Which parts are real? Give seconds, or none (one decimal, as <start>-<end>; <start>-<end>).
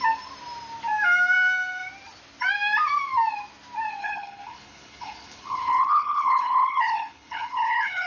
0.0-4.0